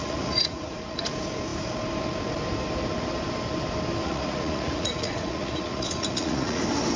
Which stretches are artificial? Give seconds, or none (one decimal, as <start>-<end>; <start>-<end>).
0.0-1.0; 4.0-6.6